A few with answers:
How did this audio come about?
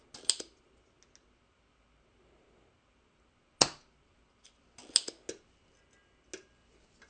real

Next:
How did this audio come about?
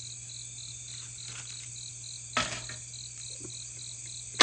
real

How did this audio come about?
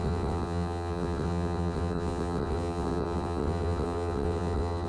fake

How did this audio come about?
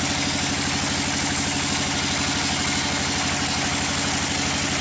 real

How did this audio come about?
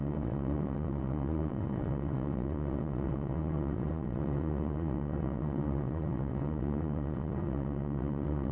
fake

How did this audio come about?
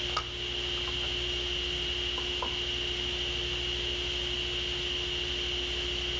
real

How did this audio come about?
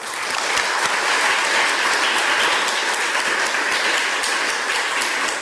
real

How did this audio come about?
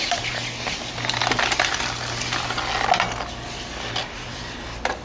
real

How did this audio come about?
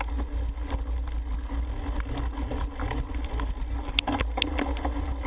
real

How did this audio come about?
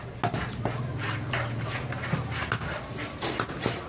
real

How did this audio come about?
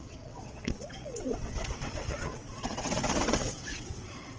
fake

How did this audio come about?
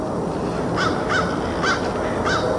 real